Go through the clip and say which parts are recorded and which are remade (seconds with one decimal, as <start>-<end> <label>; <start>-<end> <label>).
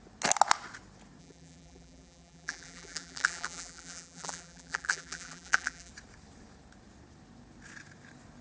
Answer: 0.0-1.2 recorded; 1.2-5.9 remade; 5.9-8.4 recorded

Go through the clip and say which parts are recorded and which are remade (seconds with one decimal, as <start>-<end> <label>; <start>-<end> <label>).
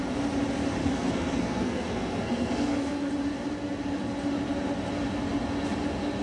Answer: 0.0-0.8 recorded; 0.8-3.1 remade; 3.1-6.2 recorded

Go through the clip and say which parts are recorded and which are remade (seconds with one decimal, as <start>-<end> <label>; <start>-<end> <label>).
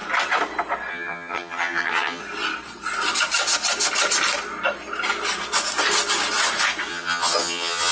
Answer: 0.0-0.9 recorded; 0.9-2.2 remade; 2.2-6.9 recorded; 6.9-7.9 remade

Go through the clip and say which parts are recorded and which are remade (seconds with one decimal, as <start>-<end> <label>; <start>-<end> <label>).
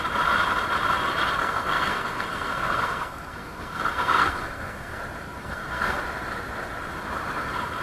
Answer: 0.0-1.4 recorded; 1.4-5.0 remade; 5.0-5.4 recorded; 5.4-6.0 remade; 6.0-7.8 recorded